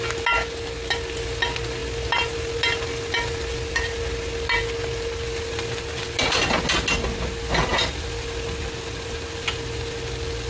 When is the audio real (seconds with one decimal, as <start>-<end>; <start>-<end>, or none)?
0.0-10.5